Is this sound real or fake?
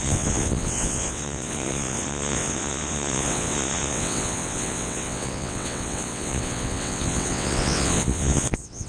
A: fake